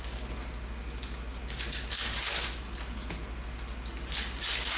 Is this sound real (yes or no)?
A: yes